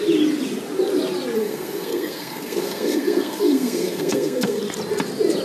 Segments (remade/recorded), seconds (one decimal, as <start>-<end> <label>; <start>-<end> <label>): 0.0-1.4 recorded; 1.4-4.6 remade; 4.6-5.4 recorded